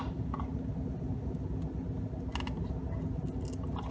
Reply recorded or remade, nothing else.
recorded